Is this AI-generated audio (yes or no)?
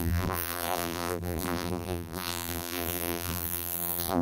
yes